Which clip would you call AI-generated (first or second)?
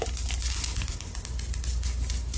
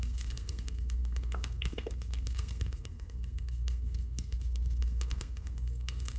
second